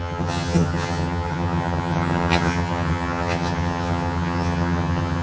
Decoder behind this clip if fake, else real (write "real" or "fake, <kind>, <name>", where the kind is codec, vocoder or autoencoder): fake, vocoder, HiFi-GAN